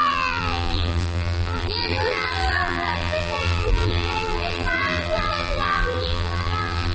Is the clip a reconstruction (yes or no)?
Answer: yes